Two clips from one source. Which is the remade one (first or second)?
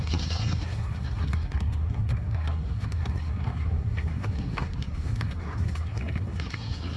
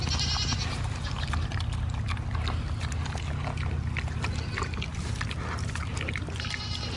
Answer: first